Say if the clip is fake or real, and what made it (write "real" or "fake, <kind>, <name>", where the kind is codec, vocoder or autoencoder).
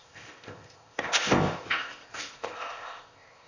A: fake, codec, ZipCodec